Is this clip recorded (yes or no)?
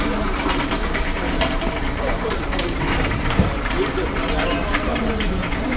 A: no